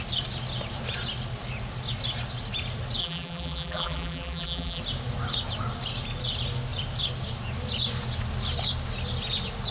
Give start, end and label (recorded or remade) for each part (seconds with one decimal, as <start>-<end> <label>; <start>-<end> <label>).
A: 0.0-3.0 recorded; 3.0-4.8 remade; 4.8-9.7 recorded